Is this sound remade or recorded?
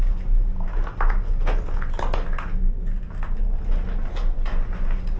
recorded